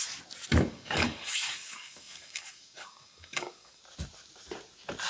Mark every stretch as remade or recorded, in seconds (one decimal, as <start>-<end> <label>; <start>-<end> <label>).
0.0-0.7 recorded; 0.7-3.8 remade; 3.8-5.1 recorded